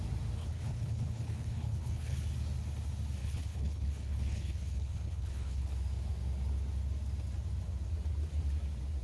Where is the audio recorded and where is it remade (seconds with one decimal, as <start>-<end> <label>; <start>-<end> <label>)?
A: 0.0-0.4 recorded; 0.4-2.2 remade; 2.2-3.2 recorded; 3.2-5.7 remade; 5.7-9.0 recorded